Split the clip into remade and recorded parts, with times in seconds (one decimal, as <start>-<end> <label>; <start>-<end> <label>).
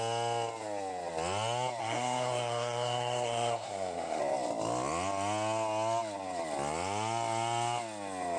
0.0-1.8 recorded; 1.8-4.2 remade; 4.2-8.4 recorded